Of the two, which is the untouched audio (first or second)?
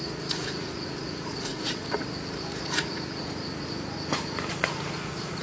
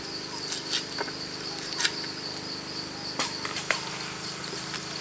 second